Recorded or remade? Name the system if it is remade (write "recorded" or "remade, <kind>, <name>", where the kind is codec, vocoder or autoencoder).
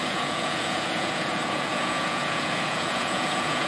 remade, vocoder, Vocos